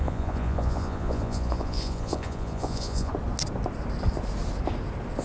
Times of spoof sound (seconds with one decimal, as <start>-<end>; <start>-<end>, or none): 0.0-3.1